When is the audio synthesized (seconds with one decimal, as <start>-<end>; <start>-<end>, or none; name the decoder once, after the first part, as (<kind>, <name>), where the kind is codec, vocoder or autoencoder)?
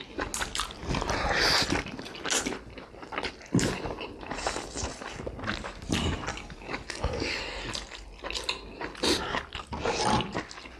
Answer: 6.3-7.4 (codec, DAC)